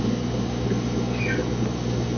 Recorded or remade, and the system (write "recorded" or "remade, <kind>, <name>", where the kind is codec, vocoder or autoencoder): recorded